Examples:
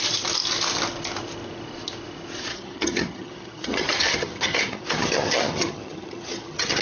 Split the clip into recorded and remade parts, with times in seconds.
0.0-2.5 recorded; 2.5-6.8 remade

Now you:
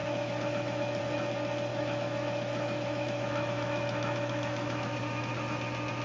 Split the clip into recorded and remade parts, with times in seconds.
0.0-1.0 remade; 1.0-1.7 recorded; 1.7-5.3 remade; 5.3-6.0 recorded

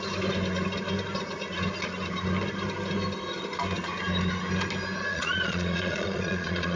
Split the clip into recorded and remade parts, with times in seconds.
0.0-5.1 recorded; 5.1-6.8 remade